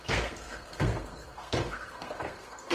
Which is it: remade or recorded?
remade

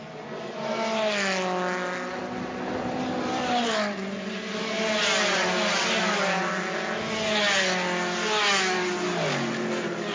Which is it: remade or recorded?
recorded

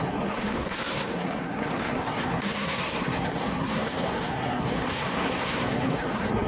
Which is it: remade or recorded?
remade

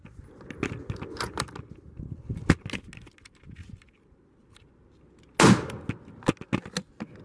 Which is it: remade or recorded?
recorded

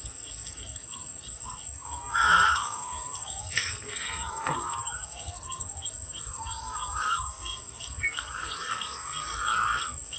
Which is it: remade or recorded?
remade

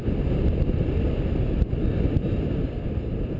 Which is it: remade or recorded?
recorded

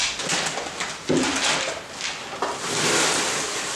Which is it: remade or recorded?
recorded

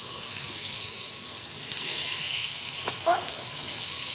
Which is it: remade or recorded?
remade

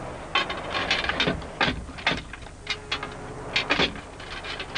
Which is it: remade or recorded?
recorded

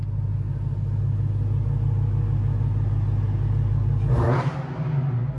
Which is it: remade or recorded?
recorded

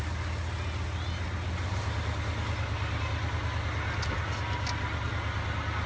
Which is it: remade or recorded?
recorded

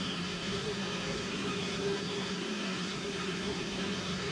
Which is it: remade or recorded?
remade